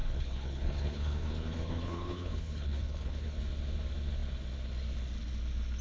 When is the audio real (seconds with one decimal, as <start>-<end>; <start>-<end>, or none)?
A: 3.4-5.8